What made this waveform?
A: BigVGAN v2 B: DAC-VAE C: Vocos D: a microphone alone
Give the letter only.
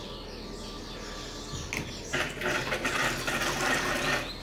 D